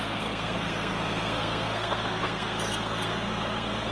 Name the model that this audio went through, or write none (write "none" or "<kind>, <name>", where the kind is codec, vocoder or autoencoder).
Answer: codec, SNAC